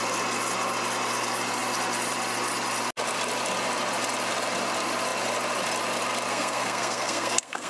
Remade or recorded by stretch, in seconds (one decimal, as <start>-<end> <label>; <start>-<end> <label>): 0.0-6.3 recorded; 6.3-7.7 remade

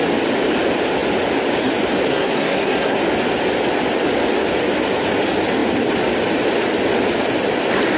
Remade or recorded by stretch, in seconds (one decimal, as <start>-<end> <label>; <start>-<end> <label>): 0.0-2.1 recorded; 2.1-3.0 remade; 3.0-8.0 recorded

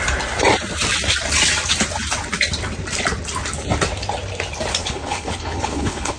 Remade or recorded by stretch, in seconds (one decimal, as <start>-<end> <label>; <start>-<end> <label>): 0.0-4.8 recorded; 4.8-6.2 remade

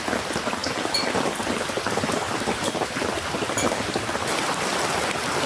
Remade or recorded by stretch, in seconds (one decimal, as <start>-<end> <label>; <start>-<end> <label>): 0.0-5.5 remade

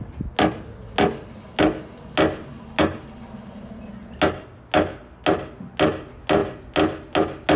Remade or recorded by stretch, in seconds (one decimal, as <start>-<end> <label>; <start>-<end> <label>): 0.0-7.6 recorded

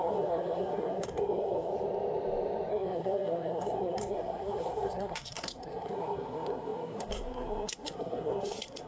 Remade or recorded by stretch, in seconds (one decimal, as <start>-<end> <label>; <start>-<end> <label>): 0.0-1.7 remade; 1.7-2.7 recorded; 2.7-8.9 remade

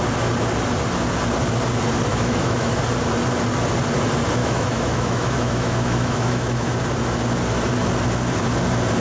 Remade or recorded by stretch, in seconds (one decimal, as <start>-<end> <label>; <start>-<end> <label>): 0.0-2.1 recorded; 2.1-2.8 remade; 2.8-4.4 recorded; 4.4-6.7 remade; 6.7-9.0 recorded